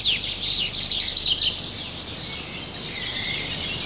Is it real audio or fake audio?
real